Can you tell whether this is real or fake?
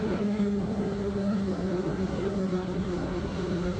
fake